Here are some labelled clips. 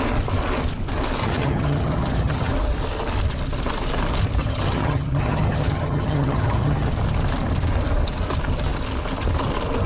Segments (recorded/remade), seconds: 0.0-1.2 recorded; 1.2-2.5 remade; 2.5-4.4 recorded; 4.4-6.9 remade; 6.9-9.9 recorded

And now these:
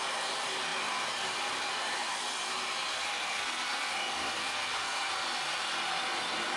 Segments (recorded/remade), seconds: 0.0-3.1 recorded; 3.1-3.9 remade; 3.9-4.4 recorded; 4.4-5.1 remade; 5.1-6.6 recorded

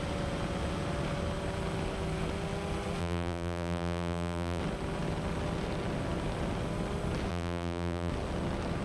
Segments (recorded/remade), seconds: 0.0-3.0 recorded; 3.0-4.6 remade; 4.6-7.3 recorded; 7.3-8.1 remade; 8.1-8.8 recorded

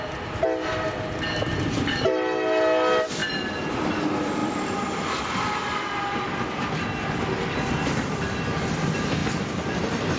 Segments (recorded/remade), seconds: 0.0-10.2 recorded

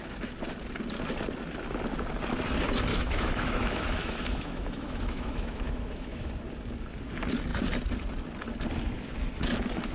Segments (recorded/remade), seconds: 0.0-2.9 recorded; 2.9-6.3 remade; 6.3-9.9 recorded

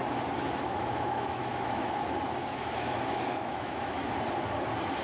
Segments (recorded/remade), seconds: 0.0-0.6 recorded; 0.6-1.9 remade; 1.9-2.4 recorded; 2.4-4.1 remade; 4.1-5.0 recorded

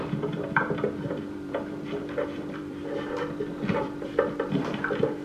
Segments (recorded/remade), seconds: 0.0-2.8 remade; 2.8-3.8 recorded; 3.8-5.2 remade